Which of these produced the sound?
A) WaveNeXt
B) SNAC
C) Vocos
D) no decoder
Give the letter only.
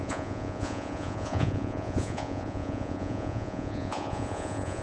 C